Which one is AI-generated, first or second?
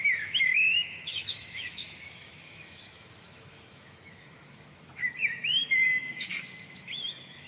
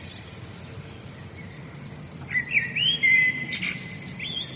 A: first